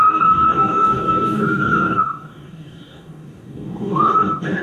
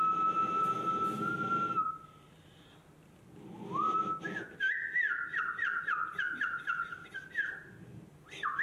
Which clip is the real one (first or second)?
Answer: second